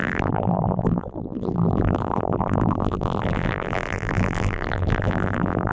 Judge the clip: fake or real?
fake